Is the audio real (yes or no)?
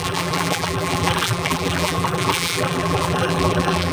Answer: no